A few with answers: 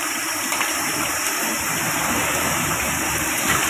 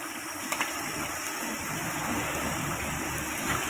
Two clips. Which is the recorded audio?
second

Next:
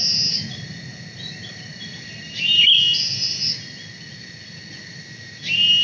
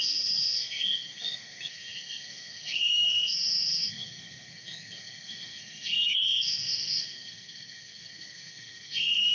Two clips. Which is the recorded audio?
first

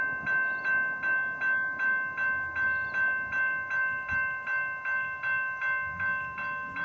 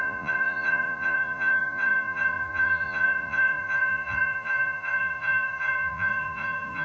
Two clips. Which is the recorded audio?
first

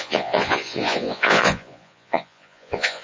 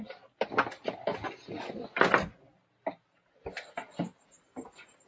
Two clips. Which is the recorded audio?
second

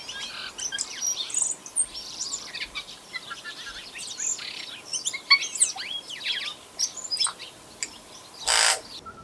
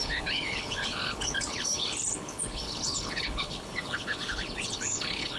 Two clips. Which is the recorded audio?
first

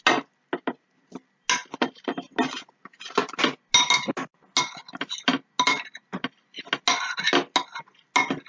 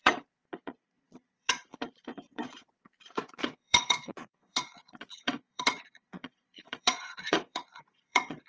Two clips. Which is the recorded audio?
first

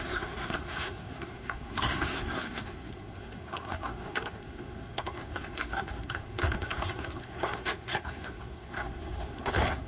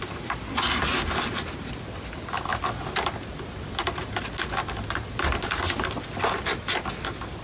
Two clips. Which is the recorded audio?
second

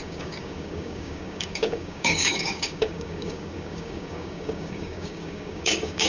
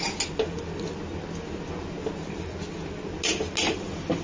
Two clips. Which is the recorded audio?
second